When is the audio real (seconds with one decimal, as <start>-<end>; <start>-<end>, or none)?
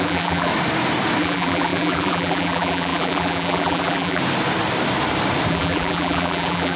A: 0.5-1.2; 4.2-5.5